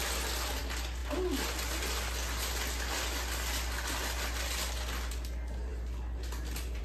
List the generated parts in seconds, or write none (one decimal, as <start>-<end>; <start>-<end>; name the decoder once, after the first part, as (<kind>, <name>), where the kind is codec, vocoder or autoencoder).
none